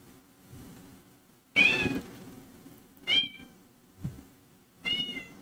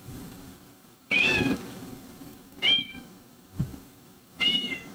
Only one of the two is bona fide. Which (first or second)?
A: first